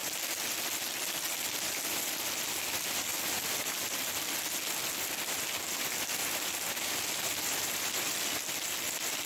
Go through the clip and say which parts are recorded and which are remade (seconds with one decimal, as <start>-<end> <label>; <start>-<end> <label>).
0.0-6.2 recorded; 6.2-8.3 remade; 8.3-9.3 recorded

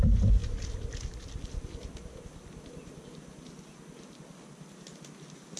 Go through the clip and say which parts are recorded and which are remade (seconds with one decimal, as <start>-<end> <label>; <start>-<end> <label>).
0.0-5.6 recorded